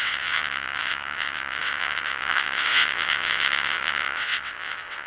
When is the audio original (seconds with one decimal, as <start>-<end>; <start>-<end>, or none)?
none

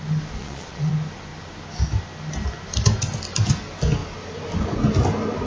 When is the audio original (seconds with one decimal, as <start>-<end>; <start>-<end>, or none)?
0.0-0.4; 0.9-5.5

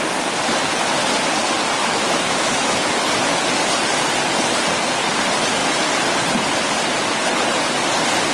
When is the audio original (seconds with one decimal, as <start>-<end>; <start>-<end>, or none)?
0.0-1.8; 3.0-8.3

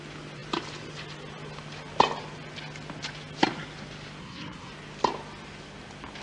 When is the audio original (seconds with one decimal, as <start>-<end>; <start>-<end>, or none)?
0.0-4.2; 4.7-6.2